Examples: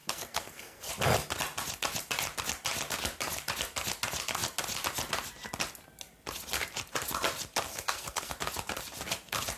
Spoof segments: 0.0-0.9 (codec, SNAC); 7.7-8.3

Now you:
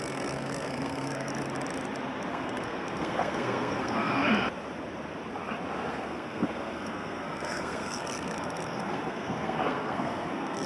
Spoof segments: 0.0-1.3 (codec, SNAC); 2.3-4.2; 5.9-10.7

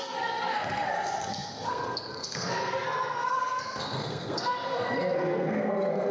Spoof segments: 0.0-6.1 (codec, SNAC)

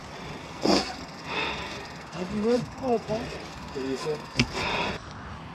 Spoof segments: 0.4-3.1 (codec, SNAC); 3.5-4.5

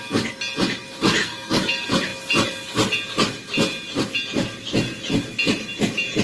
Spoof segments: 1.2-1.7 (codec, SNAC)

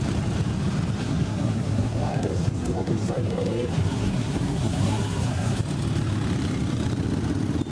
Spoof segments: 1.0-5.6 (codec, SNAC)

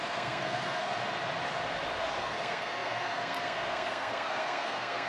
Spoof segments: 0.0-0.9 (codec, SNAC); 2.2-5.1